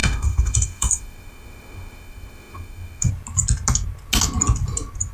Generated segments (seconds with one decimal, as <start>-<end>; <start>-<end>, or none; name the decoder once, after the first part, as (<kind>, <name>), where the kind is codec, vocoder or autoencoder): 0.0-3.1 (autoencoder, DAC-VAE)